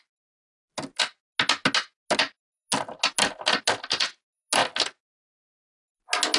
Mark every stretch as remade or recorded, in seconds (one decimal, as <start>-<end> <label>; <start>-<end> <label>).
0.0-6.4 recorded